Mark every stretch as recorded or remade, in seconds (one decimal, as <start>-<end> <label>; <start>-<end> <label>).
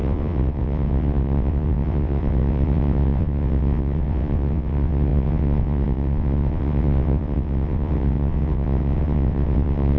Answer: 0.0-10.0 remade